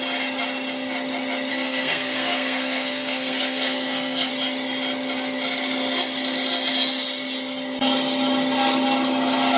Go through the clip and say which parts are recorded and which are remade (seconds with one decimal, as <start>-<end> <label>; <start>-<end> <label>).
0.0-1.5 recorded; 1.5-4.3 remade; 4.3-9.6 recorded